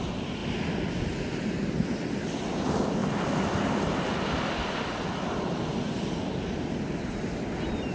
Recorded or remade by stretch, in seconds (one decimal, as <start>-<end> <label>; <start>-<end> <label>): 0.0-3.0 recorded; 3.0-6.1 remade; 6.1-7.9 recorded